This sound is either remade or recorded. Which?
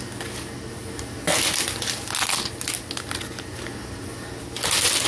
recorded